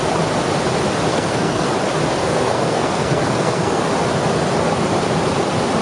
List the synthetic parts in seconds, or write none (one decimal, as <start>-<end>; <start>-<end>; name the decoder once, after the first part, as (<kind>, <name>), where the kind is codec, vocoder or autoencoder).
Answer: 1.1-1.7 (codec, SNAC); 2.2-3.8